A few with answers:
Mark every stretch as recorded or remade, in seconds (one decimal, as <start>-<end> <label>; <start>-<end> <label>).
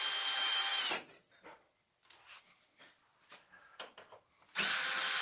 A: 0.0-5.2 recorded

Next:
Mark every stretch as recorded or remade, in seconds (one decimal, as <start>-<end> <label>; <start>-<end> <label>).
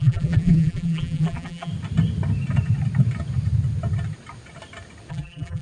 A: 0.0-1.7 remade; 1.7-5.1 recorded; 5.1-5.6 remade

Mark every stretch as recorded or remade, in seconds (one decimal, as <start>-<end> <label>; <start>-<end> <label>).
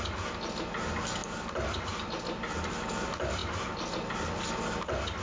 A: 0.0-5.2 recorded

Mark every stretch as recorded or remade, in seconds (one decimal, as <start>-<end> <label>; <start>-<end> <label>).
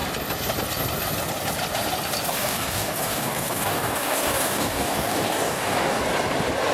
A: 0.0-2.3 recorded; 2.3-6.0 remade; 6.0-6.7 recorded